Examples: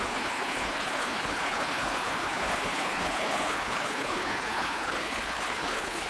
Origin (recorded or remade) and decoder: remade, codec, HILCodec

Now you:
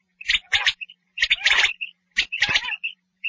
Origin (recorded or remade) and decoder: remade, vocoder, BigVGAN v2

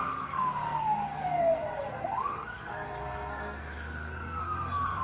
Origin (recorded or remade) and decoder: remade, codec, SNAC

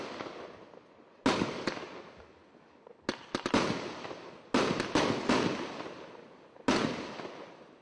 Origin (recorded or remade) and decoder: recorded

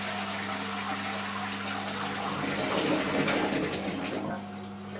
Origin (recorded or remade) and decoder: recorded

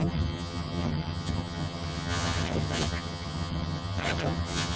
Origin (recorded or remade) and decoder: remade, vocoder, HiFi-GAN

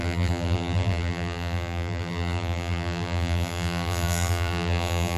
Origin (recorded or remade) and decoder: remade, vocoder, BigVGAN v2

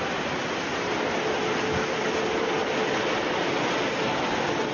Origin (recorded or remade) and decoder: recorded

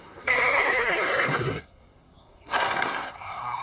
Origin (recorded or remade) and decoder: remade, codec, SNAC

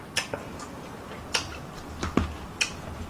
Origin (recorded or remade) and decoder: recorded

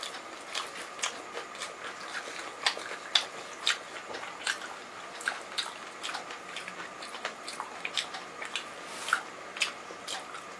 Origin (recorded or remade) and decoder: recorded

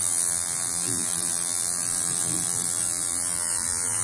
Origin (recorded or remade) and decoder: remade, vocoder, BigVGAN v2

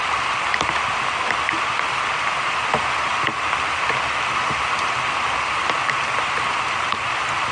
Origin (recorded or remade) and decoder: recorded